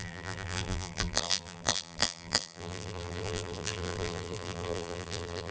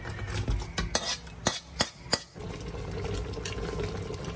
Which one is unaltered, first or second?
second